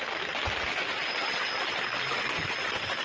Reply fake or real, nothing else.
real